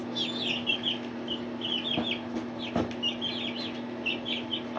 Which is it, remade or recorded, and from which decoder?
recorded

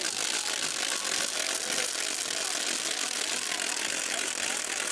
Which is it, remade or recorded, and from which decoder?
recorded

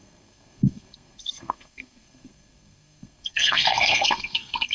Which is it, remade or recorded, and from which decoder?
remade, codec, SNAC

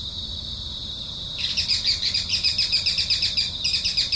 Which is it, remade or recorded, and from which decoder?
recorded